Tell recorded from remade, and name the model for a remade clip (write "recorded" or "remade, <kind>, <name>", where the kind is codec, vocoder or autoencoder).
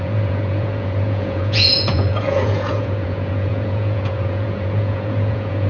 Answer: remade, vocoder, Vocos